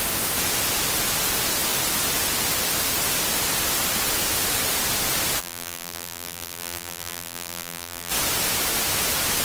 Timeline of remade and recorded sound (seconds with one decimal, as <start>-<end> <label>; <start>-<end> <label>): 0.0-5.4 recorded; 5.4-8.1 remade; 8.1-9.4 recorded